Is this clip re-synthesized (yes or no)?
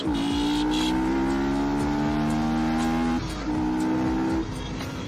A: no